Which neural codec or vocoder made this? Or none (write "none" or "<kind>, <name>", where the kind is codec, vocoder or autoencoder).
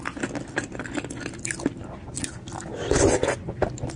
none